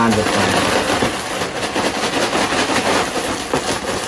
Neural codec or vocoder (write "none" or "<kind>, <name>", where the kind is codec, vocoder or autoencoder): none